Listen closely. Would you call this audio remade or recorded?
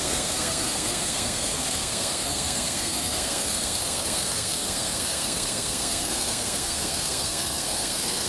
remade